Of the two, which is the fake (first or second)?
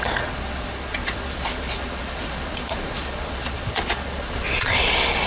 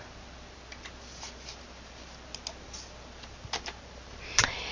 first